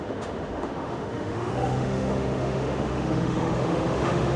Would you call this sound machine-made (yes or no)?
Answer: yes